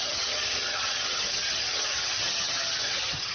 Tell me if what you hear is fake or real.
fake